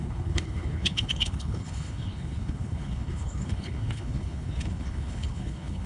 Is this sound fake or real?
fake